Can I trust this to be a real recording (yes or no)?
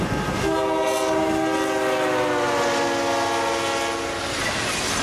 yes